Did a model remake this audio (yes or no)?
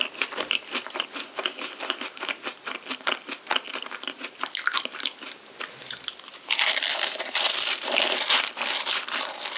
yes